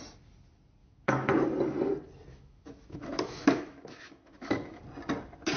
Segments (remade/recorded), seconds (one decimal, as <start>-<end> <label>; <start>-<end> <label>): 0.0-0.8 recorded; 0.8-1.3 remade; 1.3-2.3 recorded; 2.3-4.8 remade; 4.8-5.6 recorded